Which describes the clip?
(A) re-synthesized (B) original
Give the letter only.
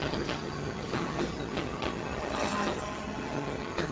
A